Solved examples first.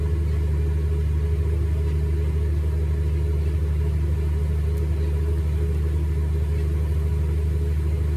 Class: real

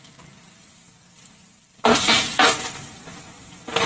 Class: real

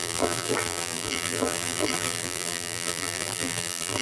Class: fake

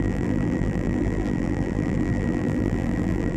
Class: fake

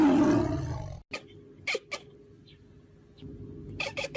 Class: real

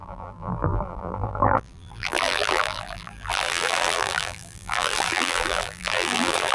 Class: fake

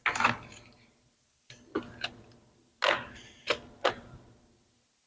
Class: real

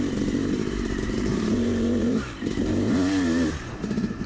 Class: fake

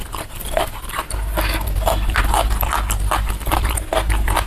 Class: real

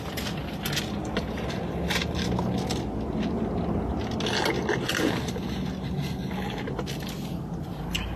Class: real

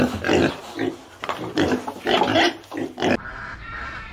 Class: real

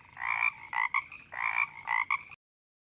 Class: real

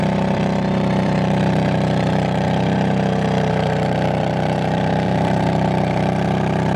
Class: fake